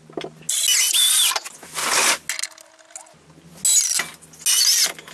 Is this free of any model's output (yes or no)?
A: yes